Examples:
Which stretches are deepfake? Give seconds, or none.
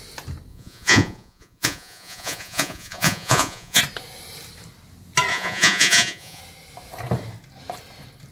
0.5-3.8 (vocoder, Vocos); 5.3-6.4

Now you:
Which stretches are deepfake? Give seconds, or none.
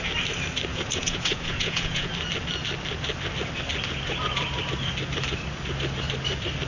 0.7-2.1 (vocoder, Vocos)